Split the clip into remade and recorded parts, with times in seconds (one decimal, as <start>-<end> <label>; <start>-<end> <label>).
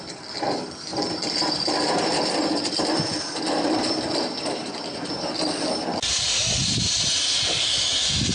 0.0-8.3 recorded